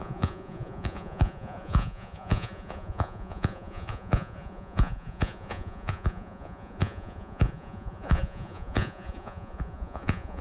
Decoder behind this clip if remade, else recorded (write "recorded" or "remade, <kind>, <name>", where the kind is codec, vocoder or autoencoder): remade, vocoder, Vocos